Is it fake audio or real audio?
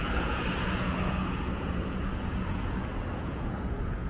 fake